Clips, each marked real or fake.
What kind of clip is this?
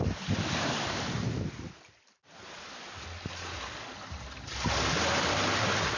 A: real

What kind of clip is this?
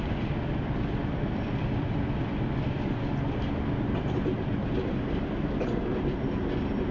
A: real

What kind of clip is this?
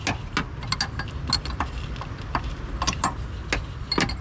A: real